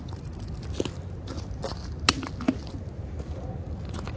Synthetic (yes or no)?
no